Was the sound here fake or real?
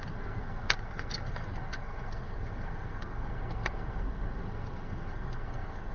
fake